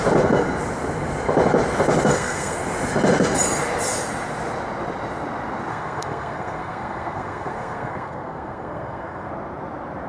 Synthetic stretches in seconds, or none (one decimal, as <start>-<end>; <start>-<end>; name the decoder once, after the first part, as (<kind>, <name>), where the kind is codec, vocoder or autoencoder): 2.1-2.6 (codec, SNAC); 5.7-9.3